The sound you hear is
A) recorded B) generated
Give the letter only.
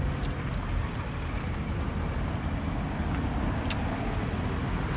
A